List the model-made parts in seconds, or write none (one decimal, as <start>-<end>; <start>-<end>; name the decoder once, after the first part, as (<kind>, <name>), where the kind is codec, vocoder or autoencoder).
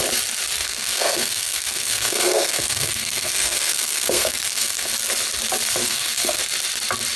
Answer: 0.6-4.9 (codec, SNAC); 5.8-6.4